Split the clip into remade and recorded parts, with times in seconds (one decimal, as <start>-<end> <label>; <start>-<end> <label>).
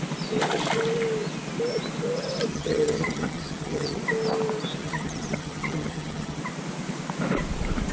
0.0-2.5 recorded; 2.5-4.0 remade; 4.0-4.8 recorded; 4.8-6.4 remade; 6.4-7.9 recorded